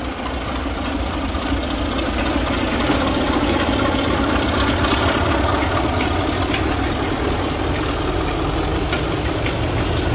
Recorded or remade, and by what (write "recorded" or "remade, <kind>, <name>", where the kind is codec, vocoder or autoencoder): recorded